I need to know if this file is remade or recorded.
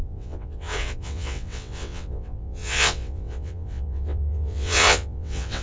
remade